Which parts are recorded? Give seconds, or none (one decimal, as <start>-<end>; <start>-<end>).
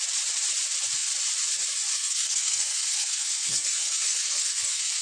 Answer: 0.0-1.9